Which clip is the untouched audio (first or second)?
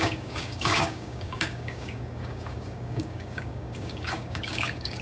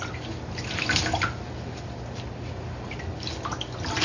second